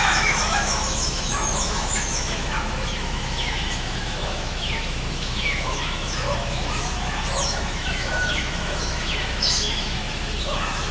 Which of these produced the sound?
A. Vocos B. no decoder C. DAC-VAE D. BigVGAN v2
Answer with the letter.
C